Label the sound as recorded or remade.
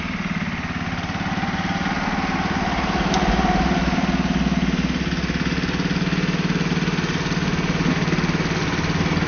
recorded